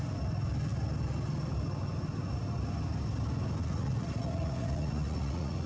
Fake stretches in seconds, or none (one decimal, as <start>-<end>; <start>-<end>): 3.6-5.7